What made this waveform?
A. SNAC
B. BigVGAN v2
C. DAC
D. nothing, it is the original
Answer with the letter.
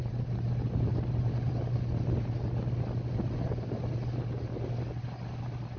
D